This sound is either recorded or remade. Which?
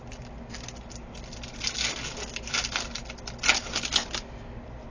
recorded